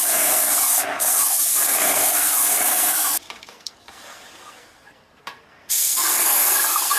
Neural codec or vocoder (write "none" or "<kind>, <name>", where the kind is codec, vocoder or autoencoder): codec, SNAC